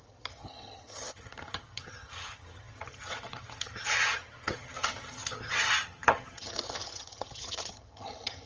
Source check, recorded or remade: remade